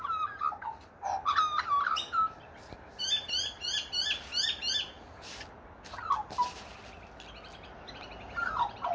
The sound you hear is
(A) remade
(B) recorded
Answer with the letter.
B